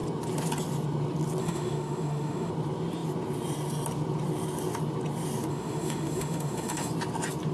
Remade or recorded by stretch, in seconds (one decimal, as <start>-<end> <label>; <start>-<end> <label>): 0.0-1.4 recorded; 1.4-2.5 remade; 2.5-5.5 recorded; 5.5-6.9 remade; 6.9-7.5 recorded